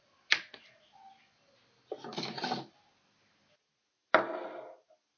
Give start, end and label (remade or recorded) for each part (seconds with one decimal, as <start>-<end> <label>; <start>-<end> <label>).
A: 0.0-5.2 recorded